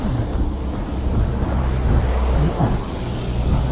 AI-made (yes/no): no